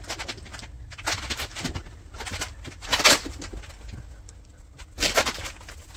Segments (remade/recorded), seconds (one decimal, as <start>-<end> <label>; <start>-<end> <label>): 0.0-6.0 recorded